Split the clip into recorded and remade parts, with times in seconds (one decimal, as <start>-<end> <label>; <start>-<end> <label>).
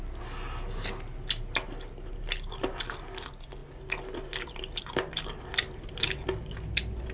0.0-7.1 recorded